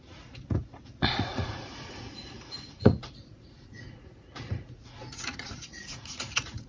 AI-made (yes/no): yes